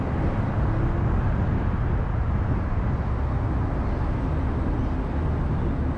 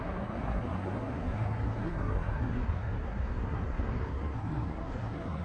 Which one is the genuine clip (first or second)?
first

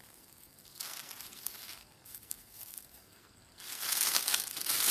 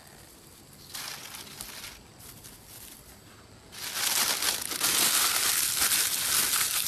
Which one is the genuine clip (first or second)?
second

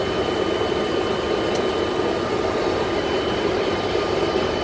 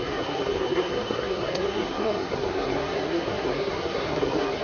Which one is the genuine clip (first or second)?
first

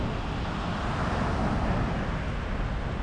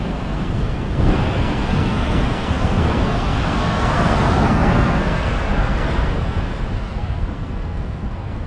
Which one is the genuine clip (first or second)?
first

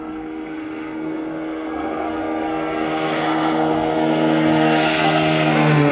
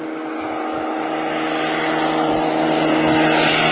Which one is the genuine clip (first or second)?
second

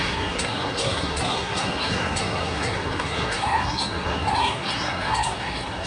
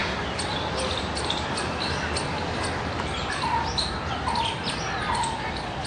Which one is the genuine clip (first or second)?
second